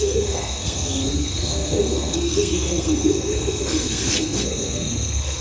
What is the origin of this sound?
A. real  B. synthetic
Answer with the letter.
B